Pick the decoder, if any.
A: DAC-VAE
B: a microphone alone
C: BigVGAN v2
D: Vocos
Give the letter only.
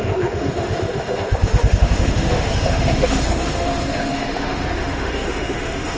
A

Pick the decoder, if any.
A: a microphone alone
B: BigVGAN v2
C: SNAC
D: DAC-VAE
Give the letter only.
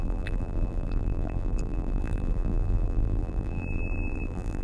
B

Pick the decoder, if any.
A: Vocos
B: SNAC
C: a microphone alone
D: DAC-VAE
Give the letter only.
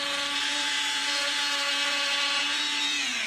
A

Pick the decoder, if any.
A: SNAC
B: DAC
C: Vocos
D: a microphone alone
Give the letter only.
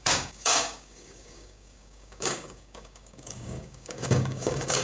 B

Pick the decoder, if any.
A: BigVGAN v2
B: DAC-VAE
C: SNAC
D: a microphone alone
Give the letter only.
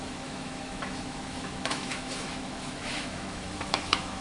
B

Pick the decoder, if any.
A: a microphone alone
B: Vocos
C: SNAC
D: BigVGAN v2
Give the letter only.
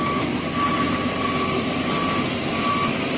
A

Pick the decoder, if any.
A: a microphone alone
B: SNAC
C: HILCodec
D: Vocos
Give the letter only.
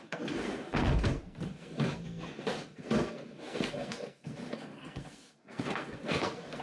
B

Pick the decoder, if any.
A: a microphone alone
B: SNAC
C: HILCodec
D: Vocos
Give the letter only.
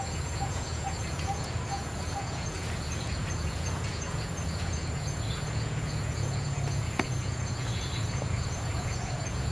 D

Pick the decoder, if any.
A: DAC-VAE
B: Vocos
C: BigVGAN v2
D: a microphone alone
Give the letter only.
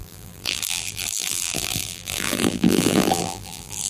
C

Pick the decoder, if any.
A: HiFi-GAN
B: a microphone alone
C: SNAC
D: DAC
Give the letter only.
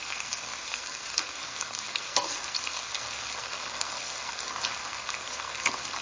C